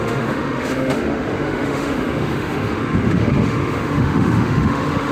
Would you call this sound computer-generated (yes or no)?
yes